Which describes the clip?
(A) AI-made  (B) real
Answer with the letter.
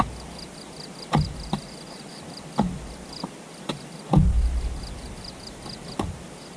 B